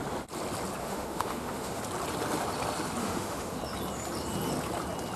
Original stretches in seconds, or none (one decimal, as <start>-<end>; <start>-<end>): 0.0-0.8; 1.8-3.0; 3.6-5.2